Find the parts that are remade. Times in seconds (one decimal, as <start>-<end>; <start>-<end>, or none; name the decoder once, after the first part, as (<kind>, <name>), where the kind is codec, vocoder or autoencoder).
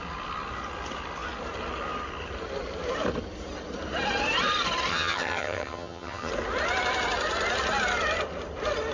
4.9-6.3 (vocoder, HiFi-GAN)